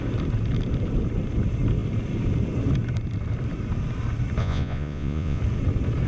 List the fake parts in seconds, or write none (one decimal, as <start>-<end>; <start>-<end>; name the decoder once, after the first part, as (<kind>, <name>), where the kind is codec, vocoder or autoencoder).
4.4-5.4 (vocoder, Vocos)